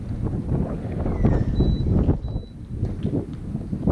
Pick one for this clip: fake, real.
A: real